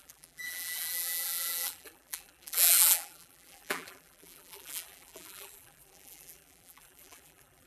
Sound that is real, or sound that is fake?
fake